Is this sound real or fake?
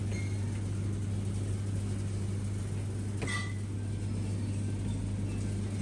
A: real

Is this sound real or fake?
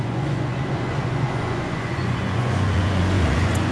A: fake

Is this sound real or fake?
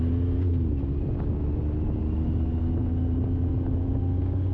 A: real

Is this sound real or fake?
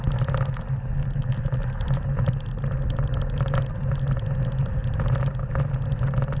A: real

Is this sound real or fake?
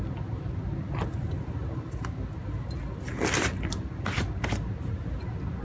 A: real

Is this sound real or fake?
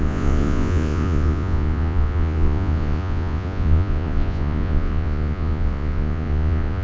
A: fake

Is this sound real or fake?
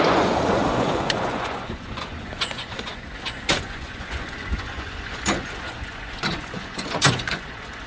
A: fake